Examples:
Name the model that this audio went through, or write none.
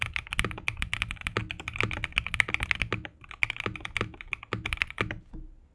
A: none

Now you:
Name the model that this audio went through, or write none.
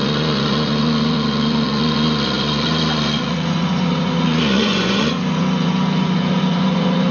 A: vocoder, Vocos